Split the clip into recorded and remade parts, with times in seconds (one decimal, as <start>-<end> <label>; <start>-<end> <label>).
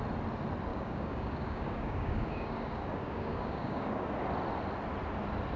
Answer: 0.0-0.7 recorded; 0.7-4.1 remade; 4.1-5.6 recorded